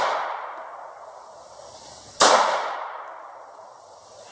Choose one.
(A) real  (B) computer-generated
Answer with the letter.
A